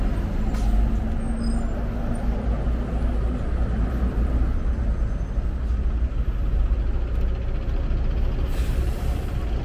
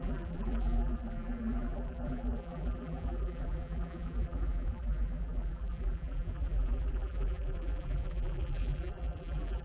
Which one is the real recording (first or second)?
first